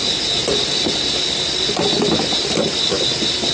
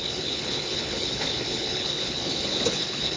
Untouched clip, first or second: first